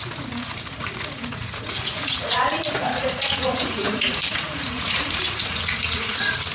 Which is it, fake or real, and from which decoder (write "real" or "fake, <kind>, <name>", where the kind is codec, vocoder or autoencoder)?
fake, vocoder, Vocos